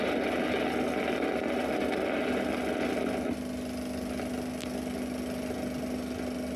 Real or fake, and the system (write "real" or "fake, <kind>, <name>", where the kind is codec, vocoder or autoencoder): real